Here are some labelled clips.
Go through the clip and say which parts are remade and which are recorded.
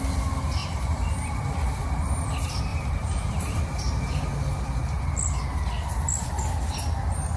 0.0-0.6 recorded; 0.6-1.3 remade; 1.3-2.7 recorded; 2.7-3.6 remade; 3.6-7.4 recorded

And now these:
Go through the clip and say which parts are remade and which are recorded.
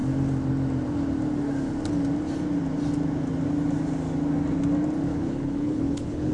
0.0-5.1 recorded; 5.1-6.3 remade